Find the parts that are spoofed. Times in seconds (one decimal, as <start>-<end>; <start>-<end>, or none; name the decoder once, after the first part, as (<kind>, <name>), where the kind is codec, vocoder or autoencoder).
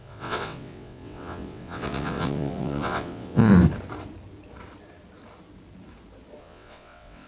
0.0-3.5 (vocoder, WaveNeXt); 6.4-7.3